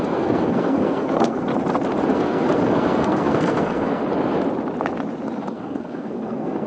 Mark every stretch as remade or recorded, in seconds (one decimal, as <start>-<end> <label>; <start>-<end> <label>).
0.0-1.5 remade; 1.5-2.1 recorded; 2.1-4.0 remade; 4.0-5.5 recorded; 5.5-6.7 remade